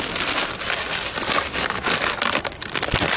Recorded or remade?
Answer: recorded